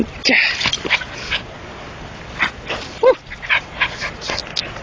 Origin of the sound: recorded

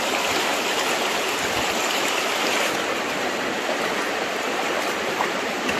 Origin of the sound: remade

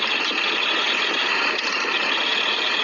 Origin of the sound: recorded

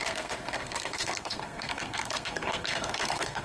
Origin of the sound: remade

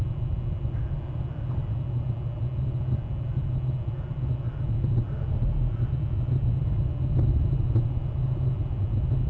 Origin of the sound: recorded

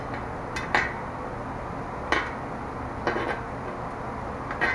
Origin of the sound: recorded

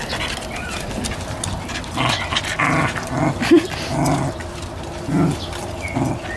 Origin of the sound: recorded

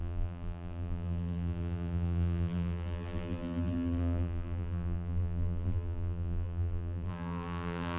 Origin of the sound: remade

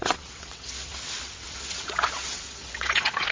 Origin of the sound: remade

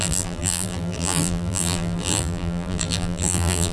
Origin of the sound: remade